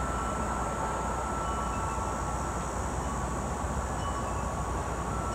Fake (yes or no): no